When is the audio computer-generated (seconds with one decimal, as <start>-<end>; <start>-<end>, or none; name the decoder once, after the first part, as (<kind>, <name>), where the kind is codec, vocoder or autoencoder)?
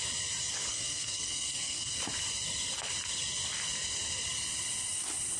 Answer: 0.7-2.0 (codec, SNAC)